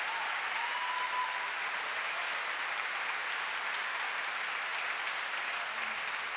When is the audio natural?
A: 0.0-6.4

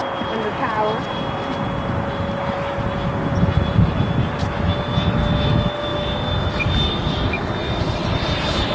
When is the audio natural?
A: 0.0-5.9; 6.9-8.7

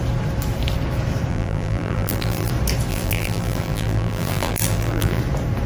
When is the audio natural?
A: 0.0-1.3; 2.5-2.9; 5.2-5.7

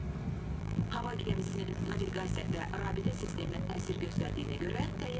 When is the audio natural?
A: 0.0-0.6

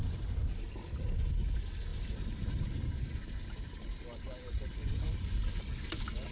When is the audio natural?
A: 0.6-1.9; 5.6-6.3

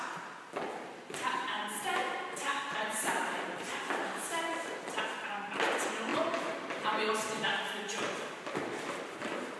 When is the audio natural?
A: 0.0-2.0; 4.3-9.6

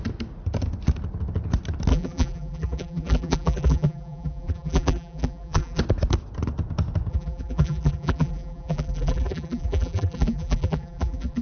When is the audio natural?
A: 0.0-1.9; 5.8-7.1